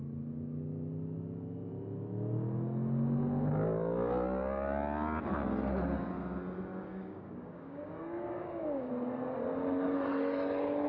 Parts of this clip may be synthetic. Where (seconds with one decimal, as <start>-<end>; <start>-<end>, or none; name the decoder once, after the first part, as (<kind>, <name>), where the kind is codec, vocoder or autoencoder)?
6.7-8.9 (codec, DAC)